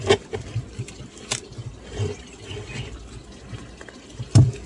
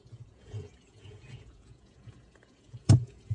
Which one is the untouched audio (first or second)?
first